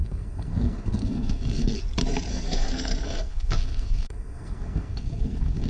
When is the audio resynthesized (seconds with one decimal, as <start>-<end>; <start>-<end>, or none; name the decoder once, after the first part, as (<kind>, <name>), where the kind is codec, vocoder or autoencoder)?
0.0-1.8 (codec, SNAC); 2.3-5.7